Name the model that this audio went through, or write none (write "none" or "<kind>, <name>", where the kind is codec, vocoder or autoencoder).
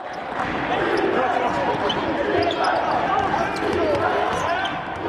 none